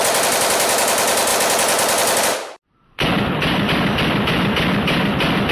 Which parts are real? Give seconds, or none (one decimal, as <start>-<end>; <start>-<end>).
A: 0.0-5.5

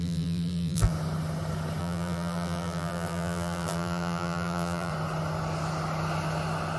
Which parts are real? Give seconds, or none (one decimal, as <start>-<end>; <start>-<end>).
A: 0.9-1.8; 4.9-6.8

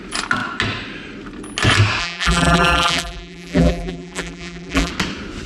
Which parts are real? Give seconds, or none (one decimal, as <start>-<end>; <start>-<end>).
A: 0.0-2.0; 4.9-5.5